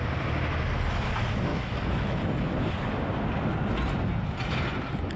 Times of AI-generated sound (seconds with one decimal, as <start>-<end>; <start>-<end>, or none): 1.5-2.2